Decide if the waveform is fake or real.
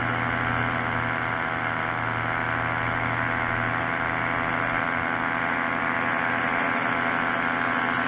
real